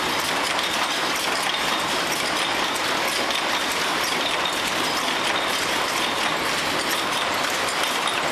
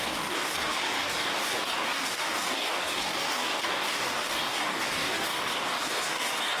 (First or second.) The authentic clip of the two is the first